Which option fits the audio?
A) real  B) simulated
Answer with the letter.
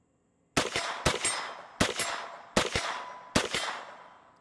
A